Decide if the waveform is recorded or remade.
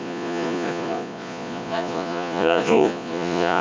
remade